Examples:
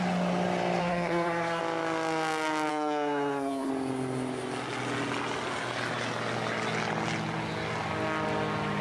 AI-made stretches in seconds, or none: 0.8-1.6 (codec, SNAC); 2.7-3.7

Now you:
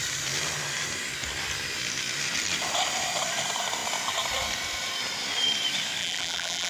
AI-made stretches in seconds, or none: 6.0-6.7 (vocoder, BigVGAN v2)

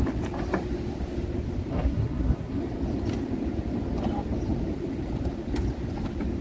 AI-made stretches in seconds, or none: 1.7-2.6 (codec, SNAC)